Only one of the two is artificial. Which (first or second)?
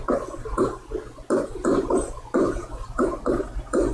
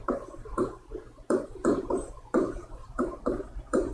second